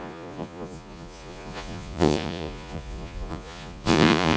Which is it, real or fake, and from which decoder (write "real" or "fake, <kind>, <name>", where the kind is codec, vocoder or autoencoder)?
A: fake, vocoder, Vocos